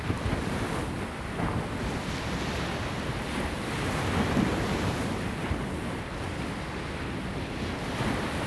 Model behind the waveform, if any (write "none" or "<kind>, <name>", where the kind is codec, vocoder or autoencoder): none